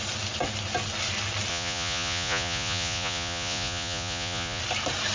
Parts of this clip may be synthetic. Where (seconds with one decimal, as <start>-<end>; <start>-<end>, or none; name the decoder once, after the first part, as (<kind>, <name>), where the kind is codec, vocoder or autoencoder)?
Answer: 1.5-4.6 (vocoder, Vocos)